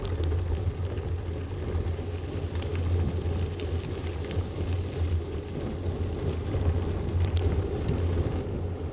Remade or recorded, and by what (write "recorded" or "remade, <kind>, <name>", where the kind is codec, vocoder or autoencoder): recorded